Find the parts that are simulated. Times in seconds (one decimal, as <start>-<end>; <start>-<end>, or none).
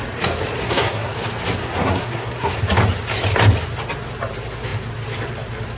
0.6-1.1; 1.6-2.6